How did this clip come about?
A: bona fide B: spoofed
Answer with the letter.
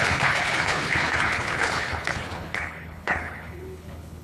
B